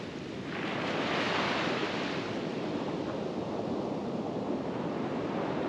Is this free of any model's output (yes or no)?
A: yes